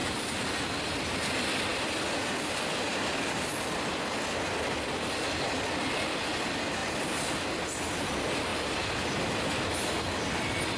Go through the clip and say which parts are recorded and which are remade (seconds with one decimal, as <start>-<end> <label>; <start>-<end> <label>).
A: 0.0-6.8 recorded; 6.8-7.4 remade; 7.4-8.5 recorded; 8.5-9.1 remade; 9.1-10.8 recorded